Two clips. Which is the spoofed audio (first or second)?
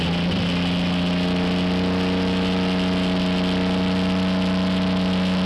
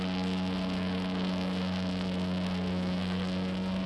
second